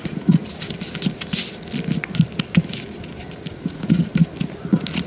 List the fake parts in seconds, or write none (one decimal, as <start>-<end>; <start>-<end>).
0.0-0.4; 3.5-4.1